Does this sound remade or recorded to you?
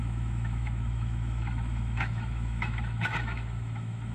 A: remade